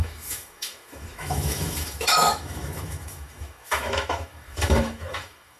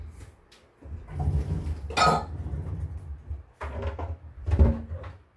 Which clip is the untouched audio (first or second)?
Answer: second